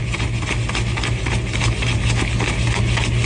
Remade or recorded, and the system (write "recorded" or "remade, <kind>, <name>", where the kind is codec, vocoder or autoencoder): recorded